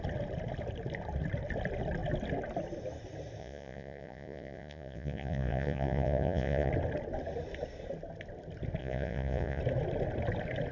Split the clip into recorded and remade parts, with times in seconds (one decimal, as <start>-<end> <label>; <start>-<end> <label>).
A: 0.0-3.4 recorded; 3.4-6.7 remade; 6.7-8.8 recorded; 8.8-9.6 remade; 9.6-10.7 recorded